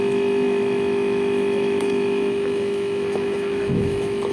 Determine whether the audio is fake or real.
fake